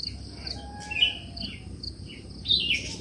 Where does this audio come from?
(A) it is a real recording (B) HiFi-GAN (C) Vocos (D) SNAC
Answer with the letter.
A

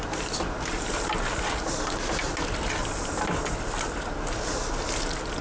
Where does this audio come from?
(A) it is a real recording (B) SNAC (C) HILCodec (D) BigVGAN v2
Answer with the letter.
A